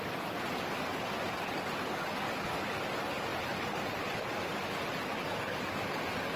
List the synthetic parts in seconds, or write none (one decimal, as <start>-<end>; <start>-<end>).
3.3-4.3